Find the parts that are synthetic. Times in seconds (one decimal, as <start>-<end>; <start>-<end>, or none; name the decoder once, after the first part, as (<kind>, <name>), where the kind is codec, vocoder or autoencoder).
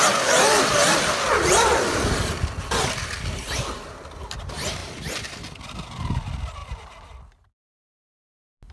none